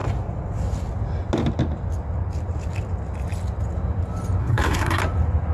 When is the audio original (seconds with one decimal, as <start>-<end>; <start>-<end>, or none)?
0.0-4.4; 5.0-5.5